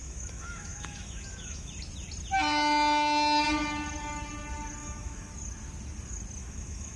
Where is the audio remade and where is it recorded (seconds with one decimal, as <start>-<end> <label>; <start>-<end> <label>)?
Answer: 0.0-1.7 remade; 1.7-4.8 recorded; 4.8-5.3 remade; 5.3-6.4 recorded; 6.4-7.0 remade